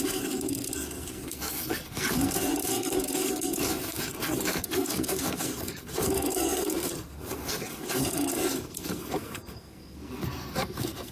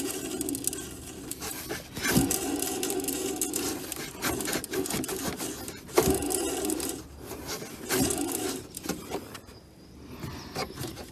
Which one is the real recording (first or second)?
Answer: second